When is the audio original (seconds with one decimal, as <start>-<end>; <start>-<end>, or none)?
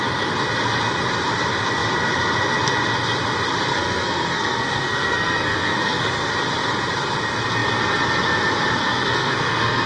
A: 0.0-3.7; 6.3-8.8